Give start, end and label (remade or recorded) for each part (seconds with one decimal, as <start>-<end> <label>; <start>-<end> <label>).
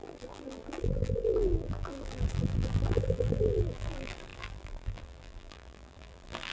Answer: 0.0-6.5 remade